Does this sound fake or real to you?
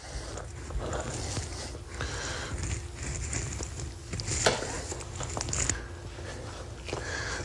real